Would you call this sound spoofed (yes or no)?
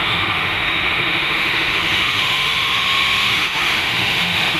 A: yes